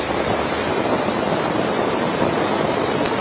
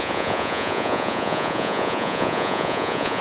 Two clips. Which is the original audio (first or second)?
first